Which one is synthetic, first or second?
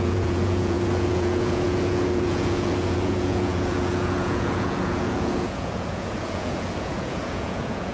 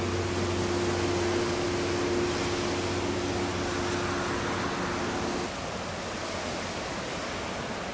first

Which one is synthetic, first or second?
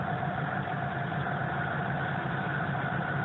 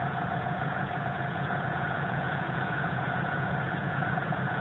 second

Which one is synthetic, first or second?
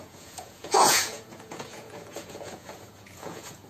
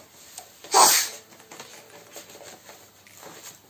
first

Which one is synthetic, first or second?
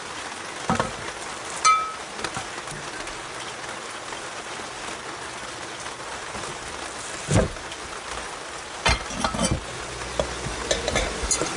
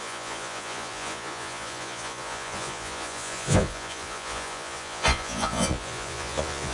second